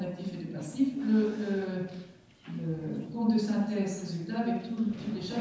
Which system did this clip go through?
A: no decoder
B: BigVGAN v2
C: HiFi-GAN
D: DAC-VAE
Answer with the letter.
A